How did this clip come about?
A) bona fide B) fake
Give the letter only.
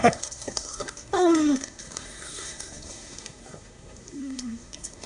B